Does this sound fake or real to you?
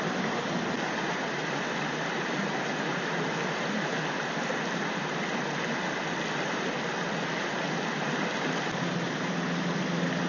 real